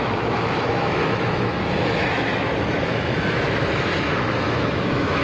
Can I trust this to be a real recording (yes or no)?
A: no